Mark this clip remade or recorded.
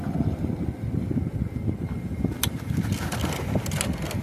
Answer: recorded